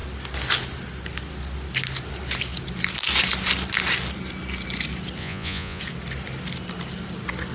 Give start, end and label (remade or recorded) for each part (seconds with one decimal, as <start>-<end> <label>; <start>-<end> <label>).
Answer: 0.0-5.2 recorded; 5.2-5.8 remade; 5.8-7.5 recorded